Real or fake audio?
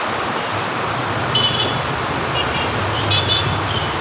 real